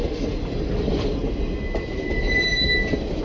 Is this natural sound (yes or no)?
yes